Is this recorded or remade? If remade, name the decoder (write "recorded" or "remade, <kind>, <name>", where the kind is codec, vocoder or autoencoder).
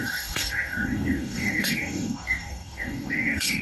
remade, codec, DAC